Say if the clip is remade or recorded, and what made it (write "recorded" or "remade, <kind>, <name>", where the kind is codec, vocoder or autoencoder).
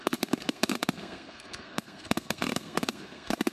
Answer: remade, codec, SNAC